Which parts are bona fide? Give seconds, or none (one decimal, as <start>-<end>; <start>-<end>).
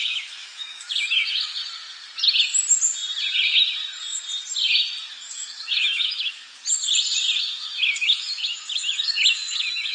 1.6-5.1; 6.6-7.4